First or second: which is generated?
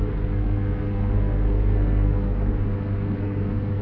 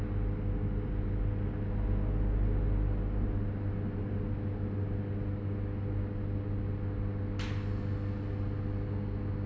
first